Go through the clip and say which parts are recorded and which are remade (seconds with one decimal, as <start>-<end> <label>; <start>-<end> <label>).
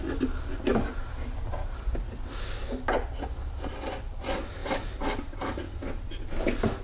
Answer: 0.0-6.8 recorded